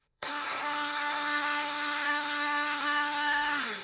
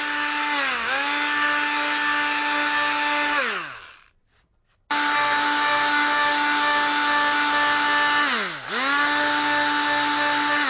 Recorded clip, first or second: second